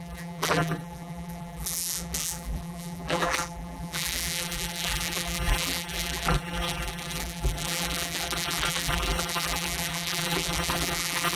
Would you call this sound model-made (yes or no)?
yes